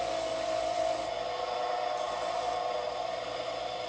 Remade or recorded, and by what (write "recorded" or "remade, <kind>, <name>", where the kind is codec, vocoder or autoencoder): recorded